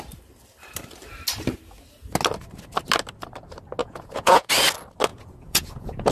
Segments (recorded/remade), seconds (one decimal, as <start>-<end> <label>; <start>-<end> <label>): 0.0-3.8 recorded; 3.8-4.5 remade; 4.5-5.1 recorded; 5.1-6.1 remade